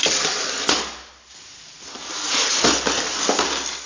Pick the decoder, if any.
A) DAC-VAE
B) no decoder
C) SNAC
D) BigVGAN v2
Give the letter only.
B